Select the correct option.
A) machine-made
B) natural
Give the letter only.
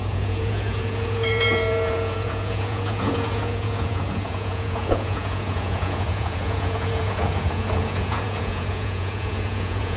A